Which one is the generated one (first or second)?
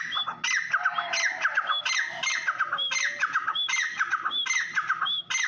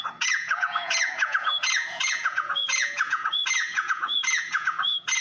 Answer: second